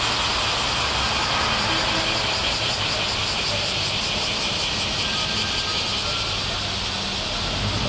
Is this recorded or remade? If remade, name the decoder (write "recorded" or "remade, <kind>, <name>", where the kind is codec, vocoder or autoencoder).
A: recorded